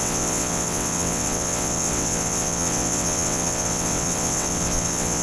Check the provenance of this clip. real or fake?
fake